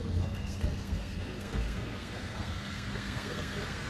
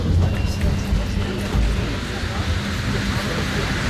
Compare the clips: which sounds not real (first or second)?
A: first